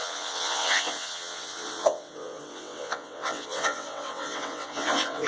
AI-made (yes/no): yes